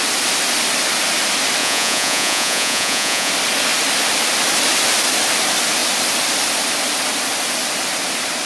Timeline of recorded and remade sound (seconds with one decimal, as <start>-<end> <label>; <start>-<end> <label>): 0.0-1.6 recorded; 1.6-3.3 remade; 3.3-8.5 recorded